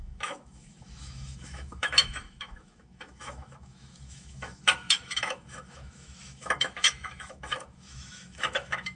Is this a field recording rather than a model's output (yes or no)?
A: no